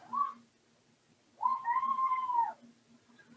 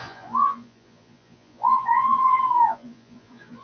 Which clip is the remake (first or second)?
second